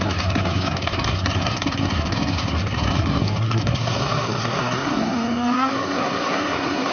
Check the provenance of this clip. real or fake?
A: fake